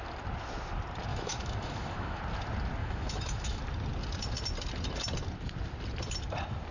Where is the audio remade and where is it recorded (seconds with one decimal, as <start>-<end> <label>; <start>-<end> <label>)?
0.0-1.1 recorded; 1.1-2.2 remade; 2.2-2.8 recorded; 2.8-3.6 remade; 3.6-6.7 recorded

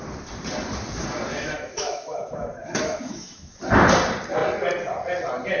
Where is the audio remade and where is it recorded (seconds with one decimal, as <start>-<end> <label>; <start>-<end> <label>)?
0.0-1.3 recorded; 1.3-3.6 remade; 3.6-5.6 recorded

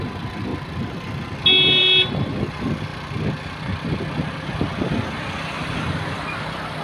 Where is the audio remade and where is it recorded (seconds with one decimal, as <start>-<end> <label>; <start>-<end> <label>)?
0.0-6.8 recorded

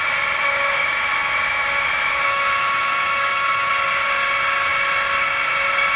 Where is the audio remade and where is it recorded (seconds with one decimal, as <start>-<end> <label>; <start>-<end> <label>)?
0.0-0.4 recorded; 0.4-3.7 remade; 3.7-6.0 recorded

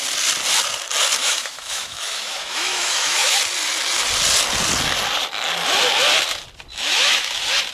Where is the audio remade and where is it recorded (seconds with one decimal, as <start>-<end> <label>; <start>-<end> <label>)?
0.0-1.2 recorded; 1.2-3.4 remade; 3.4-6.7 recorded; 6.7-7.3 remade; 7.3-7.7 recorded

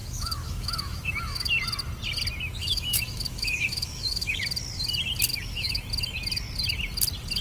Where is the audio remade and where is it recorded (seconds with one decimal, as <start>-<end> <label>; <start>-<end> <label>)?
0.0-1.5 remade; 1.5-2.6 recorded; 2.6-4.4 remade; 4.4-5.3 recorded; 5.3-5.9 remade; 5.9-7.4 recorded

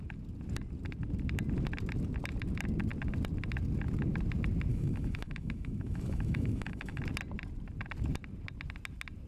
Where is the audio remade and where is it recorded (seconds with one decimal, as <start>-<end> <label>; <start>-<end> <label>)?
0.0-4.7 recorded; 4.7-7.0 remade; 7.0-9.3 recorded